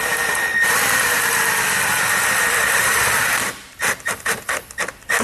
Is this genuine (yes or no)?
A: no